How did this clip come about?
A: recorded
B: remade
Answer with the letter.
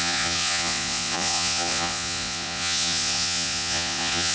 B